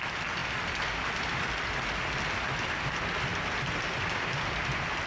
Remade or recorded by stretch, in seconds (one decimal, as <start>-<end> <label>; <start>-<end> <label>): 0.0-5.1 recorded